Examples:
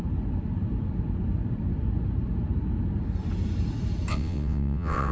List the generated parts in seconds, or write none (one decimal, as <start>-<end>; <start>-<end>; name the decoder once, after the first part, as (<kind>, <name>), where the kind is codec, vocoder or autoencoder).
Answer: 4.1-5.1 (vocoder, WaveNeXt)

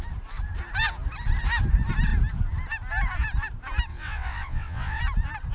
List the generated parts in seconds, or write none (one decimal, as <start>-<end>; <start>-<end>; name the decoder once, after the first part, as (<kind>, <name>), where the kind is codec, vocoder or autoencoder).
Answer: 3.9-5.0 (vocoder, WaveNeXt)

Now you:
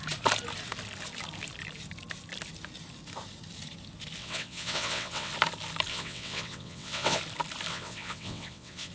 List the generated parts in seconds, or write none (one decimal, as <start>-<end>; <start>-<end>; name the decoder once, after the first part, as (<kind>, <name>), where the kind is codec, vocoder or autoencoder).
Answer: 4.2-5.3 (vocoder, WaveNeXt); 5.9-7.2; 7.7-8.9

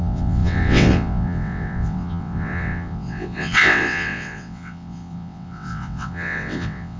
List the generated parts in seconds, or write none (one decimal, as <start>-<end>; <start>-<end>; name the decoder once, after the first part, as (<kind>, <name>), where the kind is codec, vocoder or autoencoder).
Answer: 0.0-7.0 (vocoder, WaveNeXt)

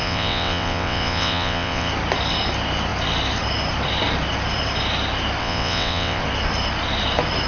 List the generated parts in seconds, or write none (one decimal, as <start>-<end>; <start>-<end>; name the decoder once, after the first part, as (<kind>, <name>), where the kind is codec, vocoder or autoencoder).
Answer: 0.0-1.9 (vocoder, WaveNeXt); 5.4-6.2

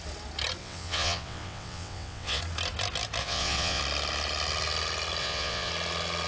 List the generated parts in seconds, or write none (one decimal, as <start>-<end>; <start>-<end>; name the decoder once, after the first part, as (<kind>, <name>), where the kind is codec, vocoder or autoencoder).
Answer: 0.6-2.4 (vocoder, WaveNeXt); 3.2-3.8; 5.2-5.7